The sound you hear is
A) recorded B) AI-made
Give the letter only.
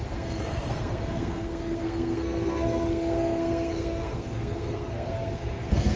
B